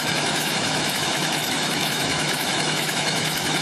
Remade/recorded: remade